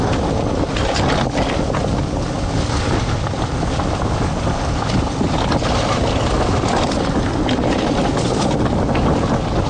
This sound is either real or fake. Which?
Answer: real